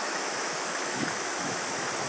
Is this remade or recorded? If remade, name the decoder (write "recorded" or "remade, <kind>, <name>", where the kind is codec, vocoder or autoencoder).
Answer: remade, autoencoder, DAC-VAE